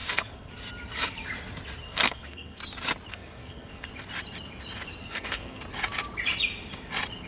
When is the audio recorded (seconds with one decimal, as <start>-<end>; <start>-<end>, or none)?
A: 0.5-1.8; 2.6-3.1; 3.9-5.0; 5.6-7.3